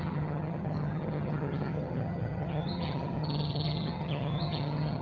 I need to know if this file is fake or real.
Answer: fake